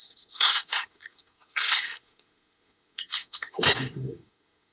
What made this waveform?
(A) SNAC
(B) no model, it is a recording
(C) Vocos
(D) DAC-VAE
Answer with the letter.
A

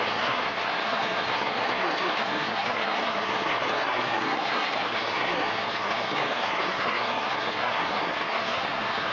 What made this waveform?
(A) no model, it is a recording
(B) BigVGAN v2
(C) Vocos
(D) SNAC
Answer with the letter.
D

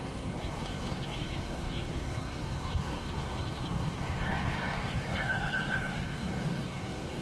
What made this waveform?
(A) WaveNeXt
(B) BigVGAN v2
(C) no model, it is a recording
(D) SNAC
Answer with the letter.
D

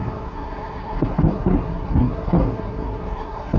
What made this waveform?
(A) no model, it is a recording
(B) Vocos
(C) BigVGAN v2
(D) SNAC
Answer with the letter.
D